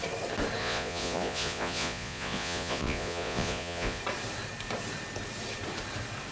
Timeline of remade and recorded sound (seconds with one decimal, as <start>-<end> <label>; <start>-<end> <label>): 0.0-0.6 recorded; 0.6-4.0 remade; 4.0-6.3 recorded